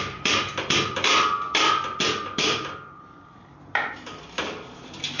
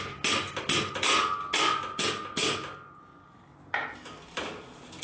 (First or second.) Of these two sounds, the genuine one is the second